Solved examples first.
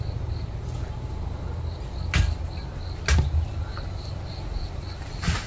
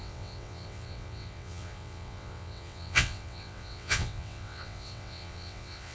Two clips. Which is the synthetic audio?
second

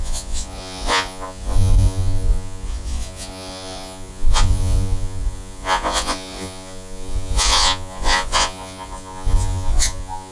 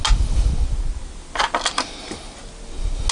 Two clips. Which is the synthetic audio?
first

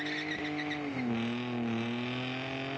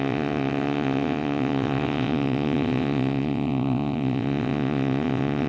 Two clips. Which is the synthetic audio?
second